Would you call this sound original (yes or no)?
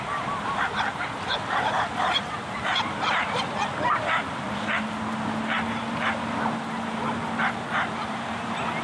yes